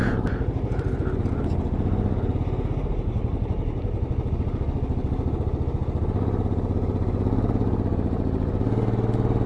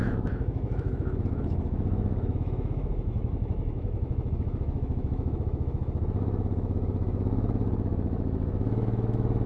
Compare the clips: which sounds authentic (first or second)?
first